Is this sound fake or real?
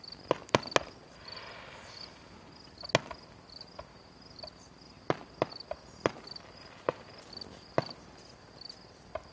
real